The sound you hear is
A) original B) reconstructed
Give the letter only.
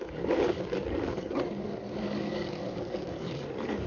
B